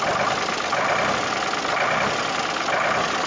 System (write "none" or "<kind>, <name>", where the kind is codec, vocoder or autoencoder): none